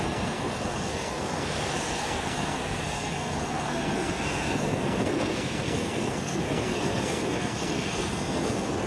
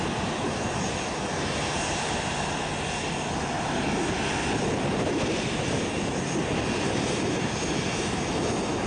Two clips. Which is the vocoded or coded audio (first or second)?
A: first